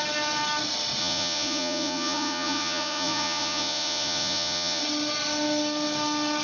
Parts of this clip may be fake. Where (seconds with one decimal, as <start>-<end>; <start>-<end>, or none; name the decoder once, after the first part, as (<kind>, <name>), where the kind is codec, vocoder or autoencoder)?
1.0-4.8 (vocoder, Vocos)